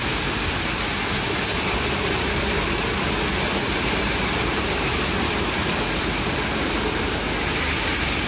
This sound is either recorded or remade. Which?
recorded